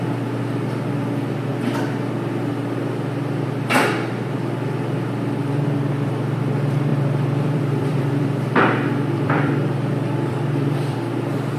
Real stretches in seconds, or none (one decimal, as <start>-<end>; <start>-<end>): 1.5-2.5